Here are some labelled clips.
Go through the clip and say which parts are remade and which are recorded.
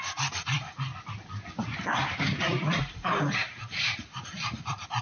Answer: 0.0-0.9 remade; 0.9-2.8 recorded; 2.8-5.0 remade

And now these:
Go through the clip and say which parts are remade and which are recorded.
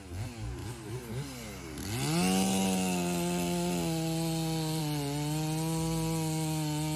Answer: 0.0-7.0 recorded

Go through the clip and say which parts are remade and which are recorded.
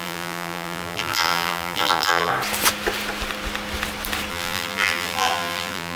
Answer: 0.0-2.3 remade; 2.3-4.3 recorded; 4.3-6.0 remade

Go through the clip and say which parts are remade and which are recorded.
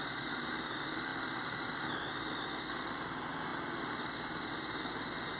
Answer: 0.0-5.4 recorded